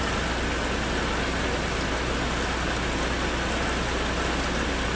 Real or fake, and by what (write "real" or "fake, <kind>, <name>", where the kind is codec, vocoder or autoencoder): real